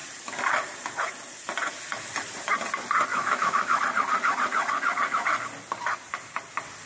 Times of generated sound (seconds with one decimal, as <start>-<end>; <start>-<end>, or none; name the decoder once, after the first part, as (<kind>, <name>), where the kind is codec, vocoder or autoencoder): 3.1-3.8 (autoencoder, DAC-VAE)